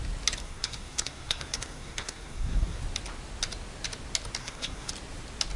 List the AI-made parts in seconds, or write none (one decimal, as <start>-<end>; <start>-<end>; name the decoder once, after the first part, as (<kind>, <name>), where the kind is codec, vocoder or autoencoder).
0.4-2.8 (codec, SNAC); 4.4-4.9